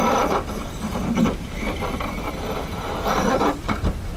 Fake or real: real